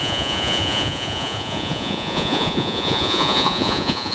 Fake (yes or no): yes